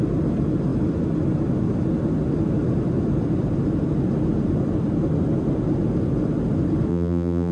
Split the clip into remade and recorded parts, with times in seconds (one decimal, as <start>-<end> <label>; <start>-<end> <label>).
0.0-6.9 recorded; 6.9-7.5 remade